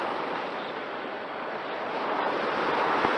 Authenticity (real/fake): real